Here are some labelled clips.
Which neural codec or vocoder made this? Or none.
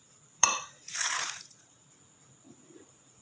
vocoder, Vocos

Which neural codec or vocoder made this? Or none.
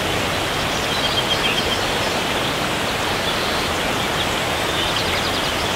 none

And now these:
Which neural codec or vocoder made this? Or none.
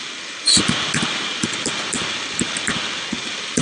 none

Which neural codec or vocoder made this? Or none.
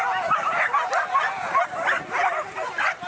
none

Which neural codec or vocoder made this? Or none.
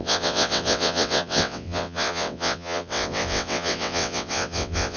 vocoder, WaveNeXt